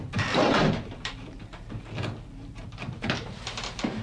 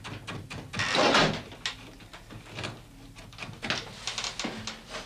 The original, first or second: second